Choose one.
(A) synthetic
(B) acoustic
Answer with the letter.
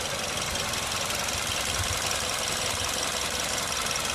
B